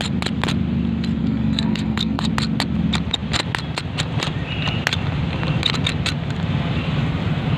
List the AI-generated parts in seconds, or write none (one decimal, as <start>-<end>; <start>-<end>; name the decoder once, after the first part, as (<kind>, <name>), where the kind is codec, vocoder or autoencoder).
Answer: 1.2-2.3 (codec, SNAC)